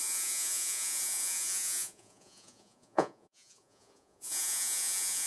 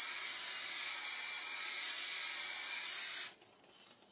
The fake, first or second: first